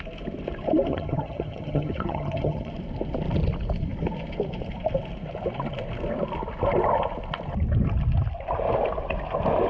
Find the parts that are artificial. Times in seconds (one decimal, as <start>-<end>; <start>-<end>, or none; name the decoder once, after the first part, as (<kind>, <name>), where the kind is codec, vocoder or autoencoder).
0.9-2.7 (vocoder, HiFi-GAN)